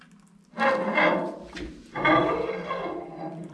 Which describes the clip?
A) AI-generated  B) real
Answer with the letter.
B